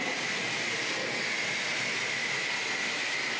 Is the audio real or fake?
real